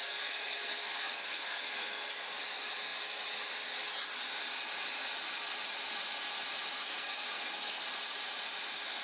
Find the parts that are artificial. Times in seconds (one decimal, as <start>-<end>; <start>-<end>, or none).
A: 0.0-2.1; 6.8-7.8